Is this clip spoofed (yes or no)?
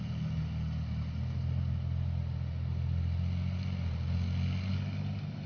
no